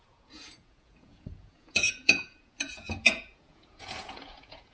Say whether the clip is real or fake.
fake